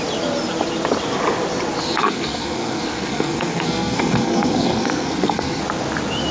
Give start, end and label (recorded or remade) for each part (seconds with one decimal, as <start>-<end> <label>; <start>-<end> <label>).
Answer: 0.0-1.8 recorded; 1.8-5.6 remade; 5.6-6.3 recorded

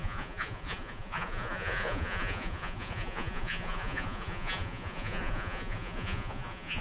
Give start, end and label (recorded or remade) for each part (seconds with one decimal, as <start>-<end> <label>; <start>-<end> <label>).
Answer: 0.0-6.8 remade